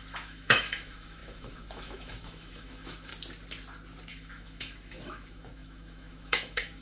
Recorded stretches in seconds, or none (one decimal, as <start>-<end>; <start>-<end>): 3.1-4.1